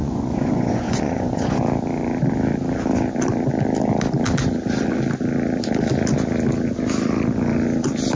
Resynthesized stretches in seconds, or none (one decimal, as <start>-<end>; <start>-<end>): 0.0-1.6